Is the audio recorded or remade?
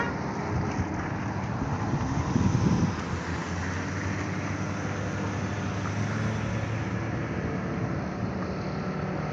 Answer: recorded